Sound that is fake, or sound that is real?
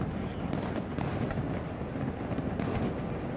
real